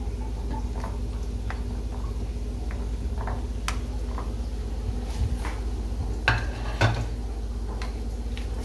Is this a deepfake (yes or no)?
no